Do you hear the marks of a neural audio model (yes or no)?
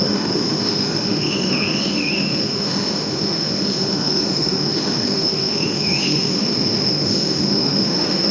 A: yes